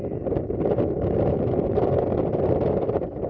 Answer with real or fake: fake